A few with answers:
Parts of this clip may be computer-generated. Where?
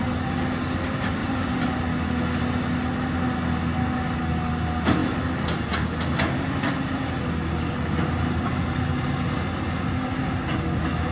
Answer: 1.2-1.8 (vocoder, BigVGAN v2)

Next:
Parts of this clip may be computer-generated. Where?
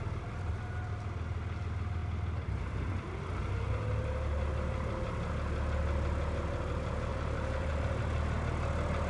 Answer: 0.0-0.5 (vocoder, BigVGAN v2); 2.0-3.2; 7.1-7.7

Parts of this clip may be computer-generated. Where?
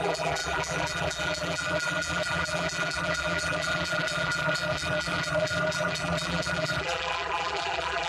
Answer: 0.0-8.1 (vocoder, BigVGAN v2)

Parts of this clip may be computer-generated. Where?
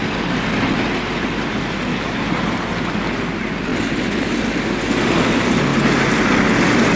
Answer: 1.9-2.7 (vocoder, BigVGAN v2)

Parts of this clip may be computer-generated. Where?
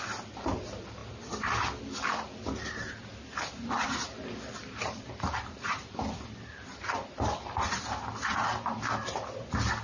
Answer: 1.0-1.8 (vocoder, BigVGAN v2); 4.6-7.7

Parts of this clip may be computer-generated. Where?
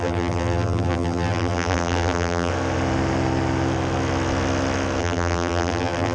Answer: 0.0-2.5 (vocoder, BigVGAN v2); 5.0-6.1